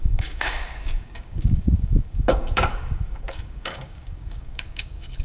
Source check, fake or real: fake